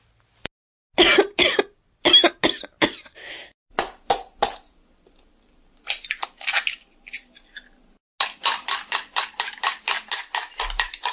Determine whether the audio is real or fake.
real